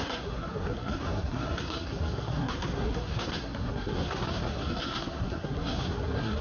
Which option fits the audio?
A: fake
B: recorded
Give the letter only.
A